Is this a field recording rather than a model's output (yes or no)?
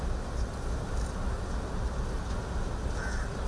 yes